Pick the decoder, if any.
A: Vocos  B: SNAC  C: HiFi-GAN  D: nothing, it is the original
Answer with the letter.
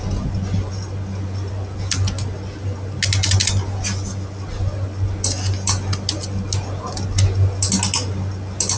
D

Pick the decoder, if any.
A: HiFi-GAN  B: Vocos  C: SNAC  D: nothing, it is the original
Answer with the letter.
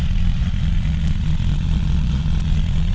B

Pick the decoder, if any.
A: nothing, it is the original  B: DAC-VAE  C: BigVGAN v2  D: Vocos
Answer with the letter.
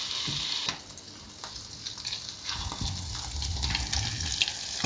A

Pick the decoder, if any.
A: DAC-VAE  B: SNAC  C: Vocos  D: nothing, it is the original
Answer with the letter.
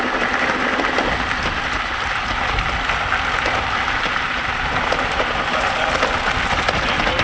D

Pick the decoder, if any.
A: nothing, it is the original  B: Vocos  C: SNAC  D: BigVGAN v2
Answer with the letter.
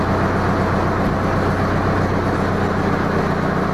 A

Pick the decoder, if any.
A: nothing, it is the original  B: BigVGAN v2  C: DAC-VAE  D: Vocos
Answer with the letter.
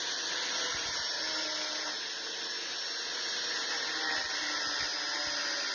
A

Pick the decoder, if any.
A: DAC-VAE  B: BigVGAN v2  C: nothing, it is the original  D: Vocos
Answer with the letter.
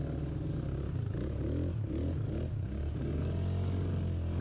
C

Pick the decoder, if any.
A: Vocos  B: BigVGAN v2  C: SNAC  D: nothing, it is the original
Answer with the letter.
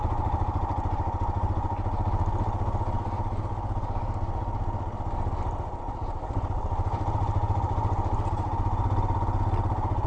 D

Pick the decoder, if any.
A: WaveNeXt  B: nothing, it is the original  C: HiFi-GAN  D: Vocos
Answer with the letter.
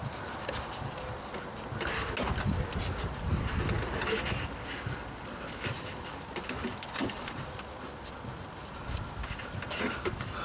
B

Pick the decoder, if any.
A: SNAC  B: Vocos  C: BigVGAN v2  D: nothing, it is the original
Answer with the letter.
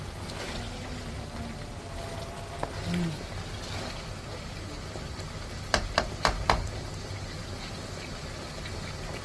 D